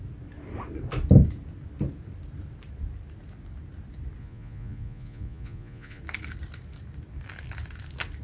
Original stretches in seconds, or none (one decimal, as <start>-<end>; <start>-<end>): 0.0-4.2; 6.0-8.2